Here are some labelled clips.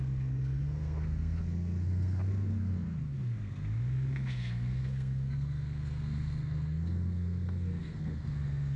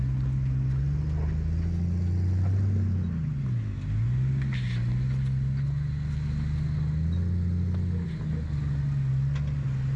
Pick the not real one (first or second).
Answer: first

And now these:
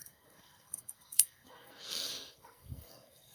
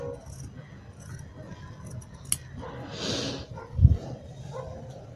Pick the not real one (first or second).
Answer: first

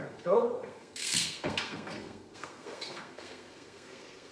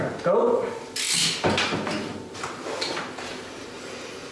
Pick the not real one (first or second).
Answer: first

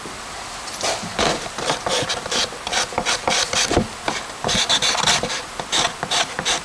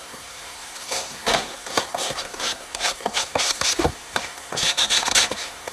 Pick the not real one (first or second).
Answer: second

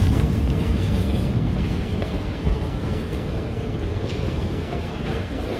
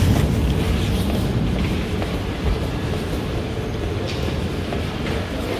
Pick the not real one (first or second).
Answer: first